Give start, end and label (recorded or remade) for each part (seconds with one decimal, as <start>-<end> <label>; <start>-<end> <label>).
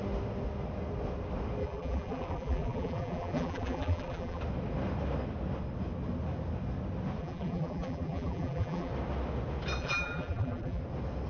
0.0-1.6 recorded; 1.6-4.4 remade; 4.4-7.2 recorded; 7.2-8.9 remade; 8.9-9.8 recorded; 9.8-10.8 remade; 10.8-11.3 recorded